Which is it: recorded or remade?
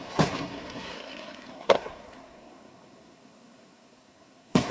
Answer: remade